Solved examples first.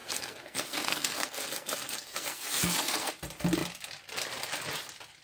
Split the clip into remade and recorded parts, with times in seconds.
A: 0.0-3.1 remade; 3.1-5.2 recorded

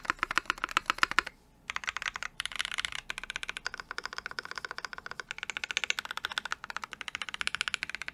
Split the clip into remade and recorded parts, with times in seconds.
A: 0.0-8.1 recorded

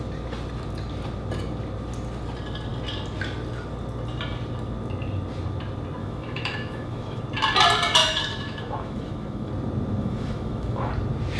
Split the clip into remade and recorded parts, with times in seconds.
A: 0.0-6.0 recorded; 6.0-7.2 remade; 7.2-8.0 recorded; 8.0-9.5 remade; 9.5-10.0 recorded; 10.0-10.9 remade; 10.9-11.4 recorded

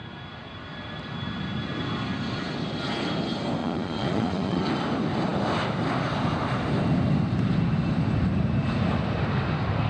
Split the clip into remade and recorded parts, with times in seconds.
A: 0.0-3.6 recorded; 3.6-4.7 remade; 4.7-9.9 recorded

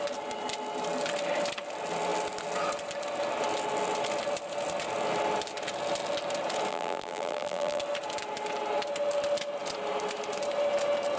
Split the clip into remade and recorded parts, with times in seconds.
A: 0.0-6.7 recorded; 6.7-7.8 remade; 7.8-11.2 recorded